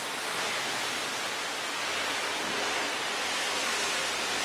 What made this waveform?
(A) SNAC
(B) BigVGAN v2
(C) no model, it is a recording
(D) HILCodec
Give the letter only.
C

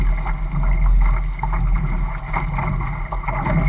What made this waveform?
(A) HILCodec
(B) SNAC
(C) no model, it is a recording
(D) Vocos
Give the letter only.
C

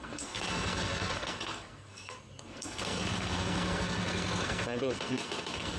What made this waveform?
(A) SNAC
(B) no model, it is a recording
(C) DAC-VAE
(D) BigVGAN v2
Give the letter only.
A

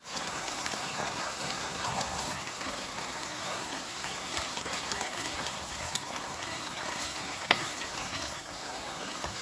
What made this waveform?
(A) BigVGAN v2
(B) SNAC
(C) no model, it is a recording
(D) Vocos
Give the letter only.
B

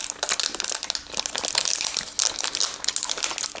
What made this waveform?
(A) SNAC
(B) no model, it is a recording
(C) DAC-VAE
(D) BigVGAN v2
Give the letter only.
B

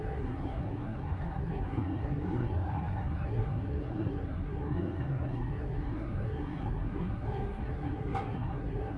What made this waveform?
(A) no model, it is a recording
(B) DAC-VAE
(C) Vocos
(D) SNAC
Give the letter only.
D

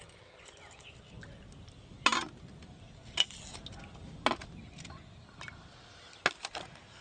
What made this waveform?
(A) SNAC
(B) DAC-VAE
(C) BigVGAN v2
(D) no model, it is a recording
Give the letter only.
D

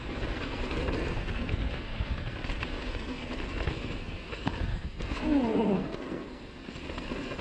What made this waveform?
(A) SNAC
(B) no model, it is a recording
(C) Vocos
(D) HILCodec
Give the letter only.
A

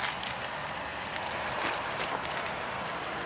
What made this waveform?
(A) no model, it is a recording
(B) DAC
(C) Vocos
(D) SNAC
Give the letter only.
A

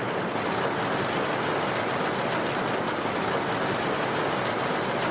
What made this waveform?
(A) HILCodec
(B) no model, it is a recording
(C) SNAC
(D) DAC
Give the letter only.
B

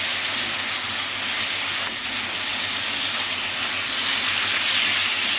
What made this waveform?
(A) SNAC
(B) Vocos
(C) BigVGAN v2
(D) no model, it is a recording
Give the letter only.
D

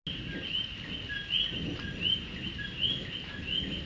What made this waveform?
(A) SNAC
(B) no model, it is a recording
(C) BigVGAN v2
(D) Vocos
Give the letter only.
B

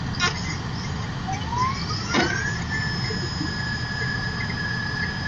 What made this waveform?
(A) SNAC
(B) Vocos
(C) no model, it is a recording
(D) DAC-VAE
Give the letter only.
C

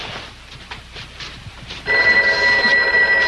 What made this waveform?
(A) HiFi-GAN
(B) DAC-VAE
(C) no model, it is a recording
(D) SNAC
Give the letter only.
C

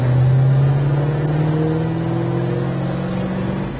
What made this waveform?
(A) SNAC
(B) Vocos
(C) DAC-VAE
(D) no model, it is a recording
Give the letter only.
D